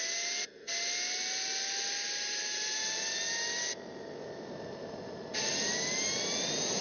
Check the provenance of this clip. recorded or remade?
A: recorded